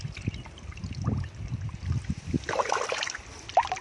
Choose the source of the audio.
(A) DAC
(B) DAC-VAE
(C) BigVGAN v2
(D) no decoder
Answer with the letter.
D